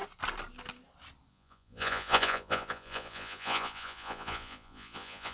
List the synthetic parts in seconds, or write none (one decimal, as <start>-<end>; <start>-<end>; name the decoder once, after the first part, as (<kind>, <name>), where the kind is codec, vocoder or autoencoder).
1.3-5.3 (vocoder, Vocos)